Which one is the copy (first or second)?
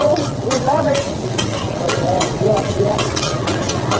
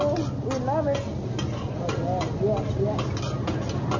first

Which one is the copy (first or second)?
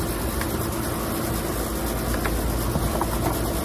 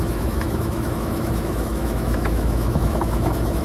second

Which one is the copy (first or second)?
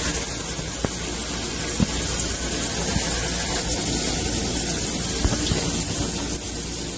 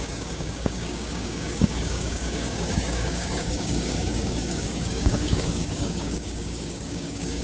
second